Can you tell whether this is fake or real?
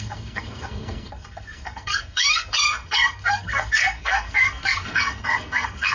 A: fake